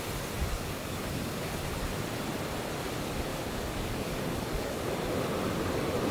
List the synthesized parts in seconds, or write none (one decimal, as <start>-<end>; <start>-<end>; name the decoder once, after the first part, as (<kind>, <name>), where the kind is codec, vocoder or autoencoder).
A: 0.4-1.5 (codec, DAC); 3.3-4.9